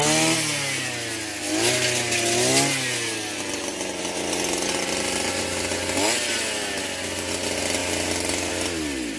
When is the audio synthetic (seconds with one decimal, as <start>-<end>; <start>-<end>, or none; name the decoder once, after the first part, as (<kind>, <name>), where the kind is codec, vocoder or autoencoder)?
none